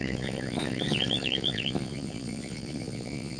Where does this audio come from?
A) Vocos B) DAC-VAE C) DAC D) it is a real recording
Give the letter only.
A